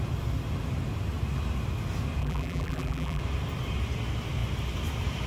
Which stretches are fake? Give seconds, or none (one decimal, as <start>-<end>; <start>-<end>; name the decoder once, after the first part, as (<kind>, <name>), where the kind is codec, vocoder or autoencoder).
2.2-3.2 (vocoder, BigVGAN v2)